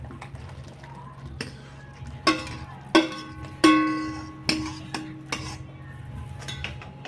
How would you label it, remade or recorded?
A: recorded